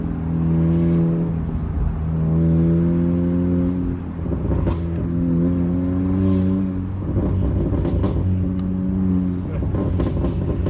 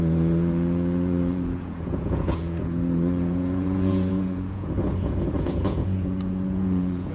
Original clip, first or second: first